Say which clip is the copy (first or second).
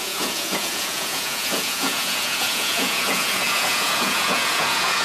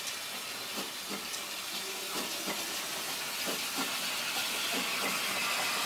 first